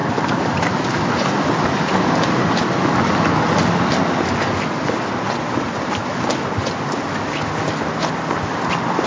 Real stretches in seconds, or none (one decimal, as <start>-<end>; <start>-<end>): 0.0-9.1